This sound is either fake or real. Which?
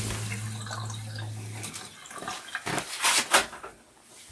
real